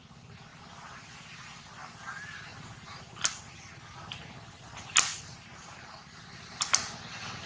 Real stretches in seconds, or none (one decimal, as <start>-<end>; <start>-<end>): 0.0-2.5; 3.4-5.1; 6.2-7.5